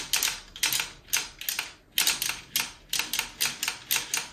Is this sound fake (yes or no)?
no